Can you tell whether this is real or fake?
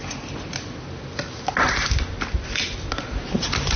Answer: real